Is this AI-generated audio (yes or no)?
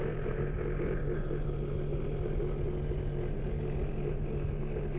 no